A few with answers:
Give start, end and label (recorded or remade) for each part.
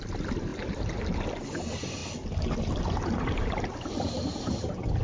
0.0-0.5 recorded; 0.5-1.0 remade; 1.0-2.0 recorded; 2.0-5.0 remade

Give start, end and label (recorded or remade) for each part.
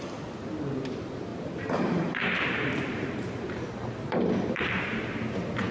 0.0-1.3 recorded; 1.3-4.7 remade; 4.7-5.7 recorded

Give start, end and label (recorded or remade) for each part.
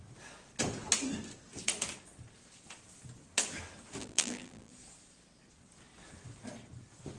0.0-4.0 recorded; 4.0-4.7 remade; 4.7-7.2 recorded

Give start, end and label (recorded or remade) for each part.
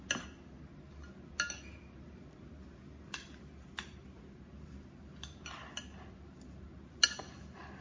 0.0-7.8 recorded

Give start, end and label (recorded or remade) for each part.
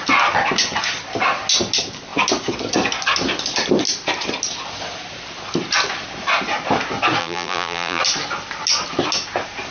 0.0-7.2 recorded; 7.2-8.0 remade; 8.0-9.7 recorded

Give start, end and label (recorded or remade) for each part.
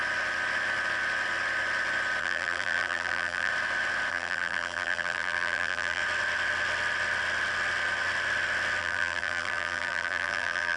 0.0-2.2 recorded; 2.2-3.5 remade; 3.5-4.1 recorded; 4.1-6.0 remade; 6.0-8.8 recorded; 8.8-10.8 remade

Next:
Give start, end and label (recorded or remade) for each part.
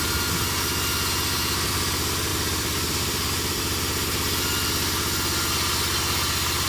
0.0-2.3 recorded; 2.3-3.6 remade; 3.6-6.7 recorded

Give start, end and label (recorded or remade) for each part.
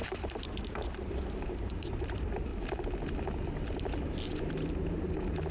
0.0-2.5 remade; 2.5-4.0 recorded; 4.0-5.5 remade